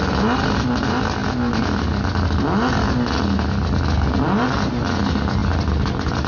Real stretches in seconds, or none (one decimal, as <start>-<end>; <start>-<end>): 0.0-6.3